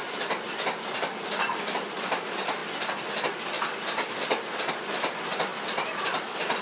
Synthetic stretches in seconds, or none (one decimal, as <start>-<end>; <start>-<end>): none